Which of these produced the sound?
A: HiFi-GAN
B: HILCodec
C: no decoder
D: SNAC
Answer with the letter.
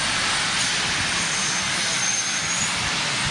C